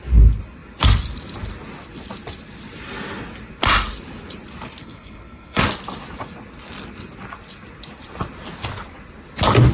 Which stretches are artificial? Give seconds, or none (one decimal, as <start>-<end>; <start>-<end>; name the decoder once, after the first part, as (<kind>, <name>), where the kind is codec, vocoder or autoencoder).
4.8-5.6 (codec, SNAC)